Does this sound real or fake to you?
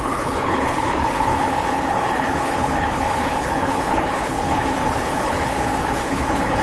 fake